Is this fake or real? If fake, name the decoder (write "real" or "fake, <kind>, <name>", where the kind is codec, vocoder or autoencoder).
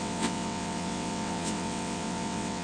fake, vocoder, WaveNeXt